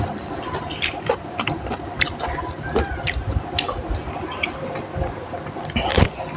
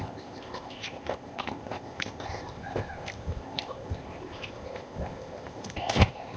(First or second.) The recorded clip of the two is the first